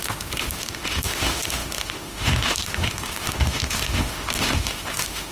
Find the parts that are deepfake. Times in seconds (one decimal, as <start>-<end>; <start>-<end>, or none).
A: 0.0-5.3